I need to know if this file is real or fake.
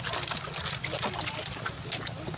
real